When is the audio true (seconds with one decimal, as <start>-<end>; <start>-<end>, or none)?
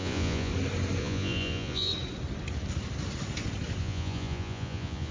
0.5-1.0; 1.9-3.8